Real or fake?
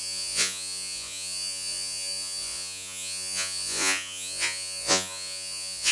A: fake